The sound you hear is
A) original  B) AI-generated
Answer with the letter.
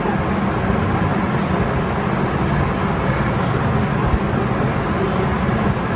A